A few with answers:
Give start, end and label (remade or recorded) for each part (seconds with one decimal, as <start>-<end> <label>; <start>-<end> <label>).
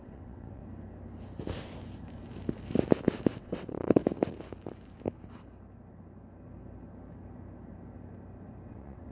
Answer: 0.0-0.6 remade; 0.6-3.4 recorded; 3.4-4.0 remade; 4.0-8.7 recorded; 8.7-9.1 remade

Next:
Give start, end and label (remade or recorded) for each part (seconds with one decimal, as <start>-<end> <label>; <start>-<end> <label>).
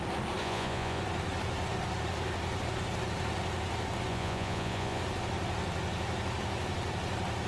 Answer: 0.0-0.4 recorded; 0.4-1.0 remade; 1.0-4.1 recorded; 4.1-5.0 remade; 5.0-7.5 recorded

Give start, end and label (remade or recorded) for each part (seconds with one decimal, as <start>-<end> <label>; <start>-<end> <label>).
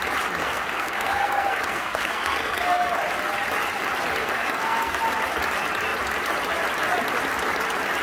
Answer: 0.0-0.4 recorded; 0.4-2.9 remade; 2.9-4.2 recorded; 4.2-5.0 remade; 5.0-8.0 recorded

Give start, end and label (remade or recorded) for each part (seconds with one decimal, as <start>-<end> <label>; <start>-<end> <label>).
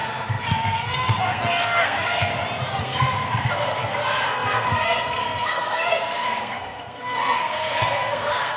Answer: 0.0-2.3 remade; 2.3-2.8 recorded; 2.8-8.6 remade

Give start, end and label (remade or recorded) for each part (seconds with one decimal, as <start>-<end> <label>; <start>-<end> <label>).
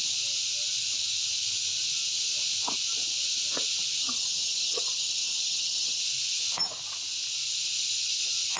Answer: 0.0-4.0 recorded; 4.0-6.0 remade; 6.0-8.6 recorded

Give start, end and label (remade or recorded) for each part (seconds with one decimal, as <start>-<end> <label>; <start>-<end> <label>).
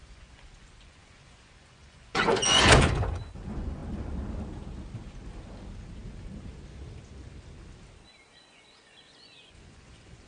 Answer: 0.0-3.8 remade; 3.8-8.3 recorded; 8.3-10.3 remade